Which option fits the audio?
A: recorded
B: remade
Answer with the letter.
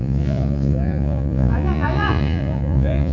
B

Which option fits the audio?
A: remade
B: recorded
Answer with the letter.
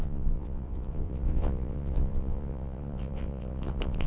A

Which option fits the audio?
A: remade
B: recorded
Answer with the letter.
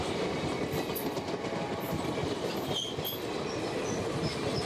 B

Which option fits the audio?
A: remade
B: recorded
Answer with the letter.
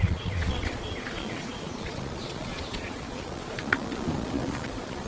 A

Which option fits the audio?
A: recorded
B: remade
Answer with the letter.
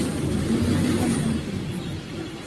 A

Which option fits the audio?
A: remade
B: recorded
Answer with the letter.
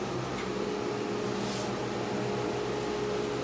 B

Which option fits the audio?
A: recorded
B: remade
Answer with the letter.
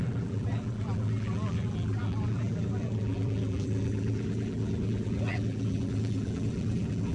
B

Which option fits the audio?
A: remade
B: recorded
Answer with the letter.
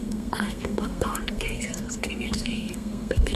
A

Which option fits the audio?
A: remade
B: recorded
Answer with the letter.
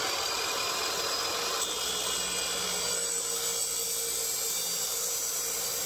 B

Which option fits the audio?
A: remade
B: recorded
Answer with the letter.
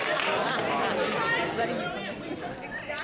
B